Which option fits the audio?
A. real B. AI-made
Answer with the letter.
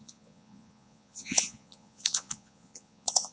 B